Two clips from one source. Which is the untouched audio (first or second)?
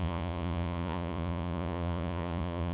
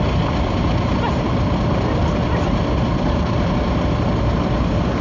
second